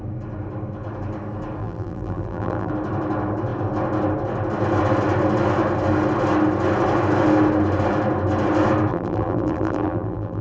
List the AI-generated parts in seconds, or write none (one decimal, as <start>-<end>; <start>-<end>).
1.6-2.7; 8.9-10.4